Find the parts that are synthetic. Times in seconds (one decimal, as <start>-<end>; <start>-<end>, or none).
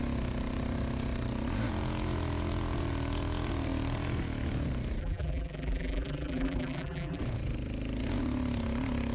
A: 5.0-7.2